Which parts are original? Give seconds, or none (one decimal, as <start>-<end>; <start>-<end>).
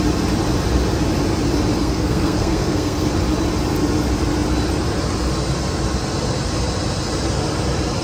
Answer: 0.0-1.8; 3.1-8.0